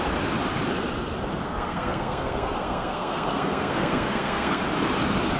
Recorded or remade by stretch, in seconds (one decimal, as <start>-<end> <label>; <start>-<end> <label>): 0.0-1.4 recorded; 1.4-4.6 remade; 4.6-5.4 recorded